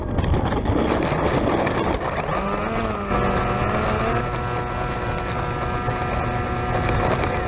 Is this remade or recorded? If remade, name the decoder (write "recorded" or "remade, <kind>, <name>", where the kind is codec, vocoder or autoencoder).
recorded